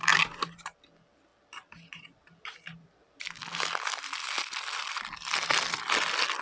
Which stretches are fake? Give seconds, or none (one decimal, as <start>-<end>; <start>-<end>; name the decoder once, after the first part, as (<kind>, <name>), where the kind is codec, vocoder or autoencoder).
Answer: none